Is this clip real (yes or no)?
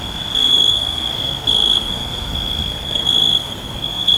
no